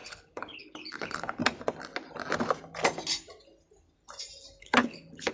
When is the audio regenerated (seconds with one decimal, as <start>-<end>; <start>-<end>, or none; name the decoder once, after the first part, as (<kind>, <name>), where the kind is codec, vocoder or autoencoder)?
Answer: 0.0-1.4 (codec, HILCodec); 4.6-5.3